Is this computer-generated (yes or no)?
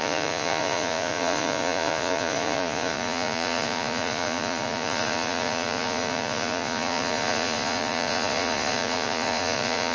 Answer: yes